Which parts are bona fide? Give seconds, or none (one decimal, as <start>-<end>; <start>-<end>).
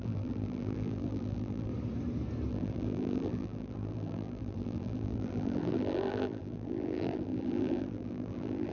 1.7-2.5